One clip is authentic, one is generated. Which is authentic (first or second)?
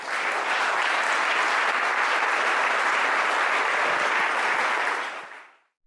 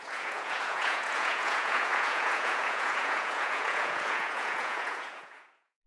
first